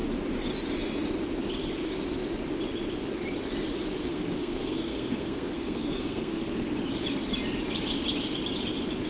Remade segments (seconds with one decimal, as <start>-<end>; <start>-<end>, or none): 4.0-6.5